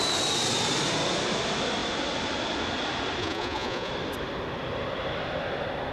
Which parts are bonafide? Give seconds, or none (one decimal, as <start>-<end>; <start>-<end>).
0.0-3.2; 3.9-5.9